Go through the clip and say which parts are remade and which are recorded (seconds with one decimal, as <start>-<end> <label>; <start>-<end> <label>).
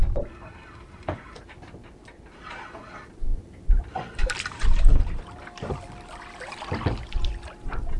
0.0-8.0 remade